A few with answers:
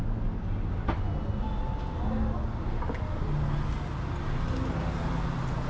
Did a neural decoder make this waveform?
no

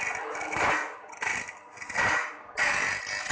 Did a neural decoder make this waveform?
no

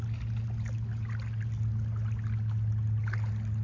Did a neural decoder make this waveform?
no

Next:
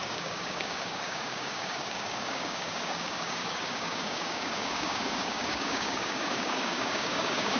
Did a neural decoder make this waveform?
yes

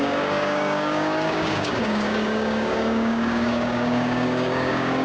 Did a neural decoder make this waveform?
yes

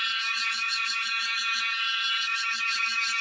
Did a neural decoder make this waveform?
yes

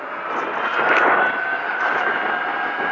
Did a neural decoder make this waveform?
no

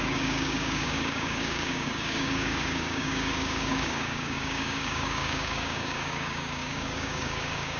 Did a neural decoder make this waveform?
yes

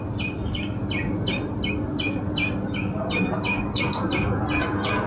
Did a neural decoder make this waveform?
no